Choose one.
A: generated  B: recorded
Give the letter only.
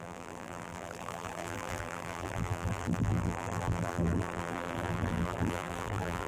A